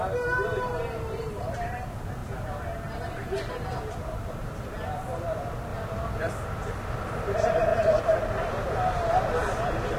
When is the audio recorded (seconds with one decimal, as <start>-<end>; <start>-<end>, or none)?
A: 5.7-6.2